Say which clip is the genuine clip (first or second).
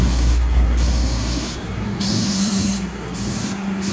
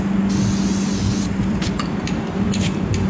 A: second